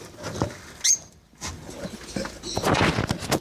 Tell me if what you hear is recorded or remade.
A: recorded